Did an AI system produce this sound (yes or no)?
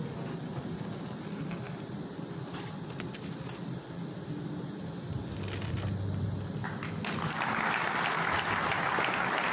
no